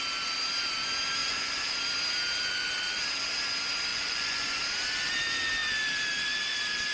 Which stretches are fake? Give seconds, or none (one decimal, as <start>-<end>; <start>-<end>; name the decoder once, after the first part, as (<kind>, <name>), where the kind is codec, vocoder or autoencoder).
1.2-1.7 (vocoder, Vocos); 3.9-4.6